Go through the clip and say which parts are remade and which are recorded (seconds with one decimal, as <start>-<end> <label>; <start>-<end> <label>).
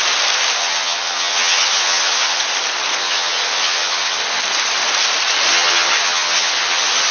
0.0-0.6 recorded; 0.6-2.4 remade; 2.4-3.0 recorded; 3.0-4.4 remade; 4.4-5.5 recorded; 5.5-7.1 remade